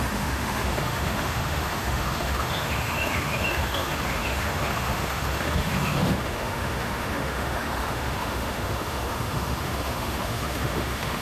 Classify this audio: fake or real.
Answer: fake